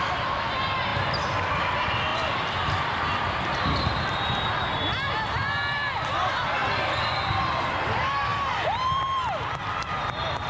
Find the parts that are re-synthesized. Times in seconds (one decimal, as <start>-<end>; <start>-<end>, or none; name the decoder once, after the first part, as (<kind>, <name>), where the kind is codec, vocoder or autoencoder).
0.9-1.5 (vocoder, BigVGAN v2); 2.1-4.0; 6.6-7.4; 8.3-9.5